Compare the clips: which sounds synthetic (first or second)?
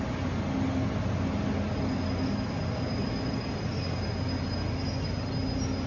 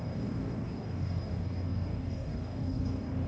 second